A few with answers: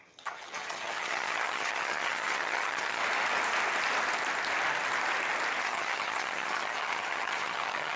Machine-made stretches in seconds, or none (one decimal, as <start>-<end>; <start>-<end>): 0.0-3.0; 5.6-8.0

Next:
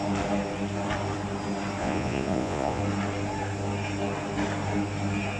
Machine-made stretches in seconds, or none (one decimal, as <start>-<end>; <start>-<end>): 1.8-2.8

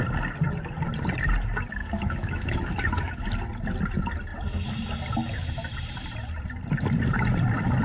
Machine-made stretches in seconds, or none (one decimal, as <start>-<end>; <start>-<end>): 1.8-3.2

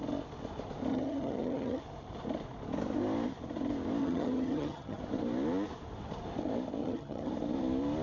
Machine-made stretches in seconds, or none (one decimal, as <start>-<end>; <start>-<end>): 0.9-1.8; 4.0-5.0; 6.8-7.3

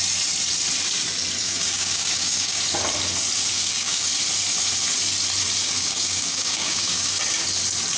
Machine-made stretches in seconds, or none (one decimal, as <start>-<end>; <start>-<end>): 1.4-2.6; 3.5-4.1; 5.6-7.2

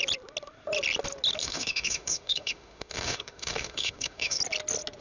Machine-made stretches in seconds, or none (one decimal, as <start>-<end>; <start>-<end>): 1.4-4.4